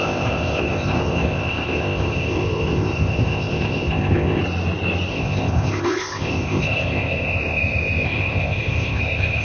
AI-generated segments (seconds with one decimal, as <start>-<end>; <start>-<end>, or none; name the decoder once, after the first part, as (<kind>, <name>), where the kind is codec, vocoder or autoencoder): 0.0-4.4 (codec, ZipCodec); 5.1-9.4